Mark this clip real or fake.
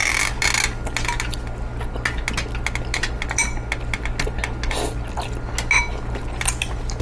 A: real